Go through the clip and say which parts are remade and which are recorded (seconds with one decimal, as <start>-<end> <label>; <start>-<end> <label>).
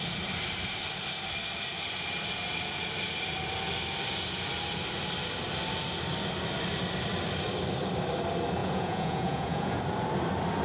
0.0-8.6 recorded; 8.6-9.8 remade; 9.8-10.6 recorded